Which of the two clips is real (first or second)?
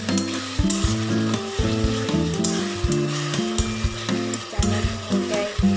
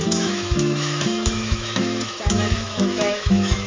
first